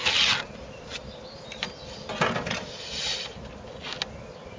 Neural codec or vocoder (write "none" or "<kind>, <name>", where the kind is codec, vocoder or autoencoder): none